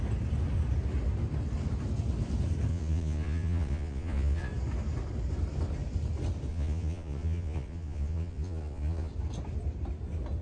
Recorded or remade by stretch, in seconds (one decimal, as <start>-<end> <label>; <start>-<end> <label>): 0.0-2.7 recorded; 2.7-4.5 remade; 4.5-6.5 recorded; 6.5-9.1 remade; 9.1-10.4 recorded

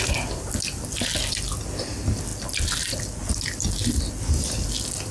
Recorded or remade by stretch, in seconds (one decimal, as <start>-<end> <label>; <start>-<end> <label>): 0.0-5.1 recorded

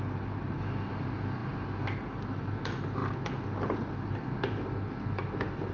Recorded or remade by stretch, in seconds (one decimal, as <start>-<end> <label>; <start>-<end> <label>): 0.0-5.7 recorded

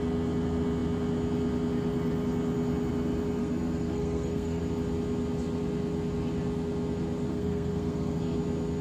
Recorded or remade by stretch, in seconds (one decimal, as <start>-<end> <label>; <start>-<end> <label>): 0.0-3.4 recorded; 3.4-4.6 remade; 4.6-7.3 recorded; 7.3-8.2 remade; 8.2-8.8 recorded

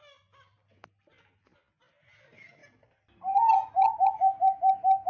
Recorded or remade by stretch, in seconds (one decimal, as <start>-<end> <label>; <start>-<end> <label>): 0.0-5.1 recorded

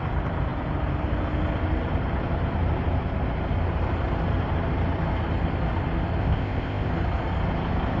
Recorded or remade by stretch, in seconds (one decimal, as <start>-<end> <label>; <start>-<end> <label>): 0.0-6.2 recorded; 6.2-6.9 remade; 6.9-8.0 recorded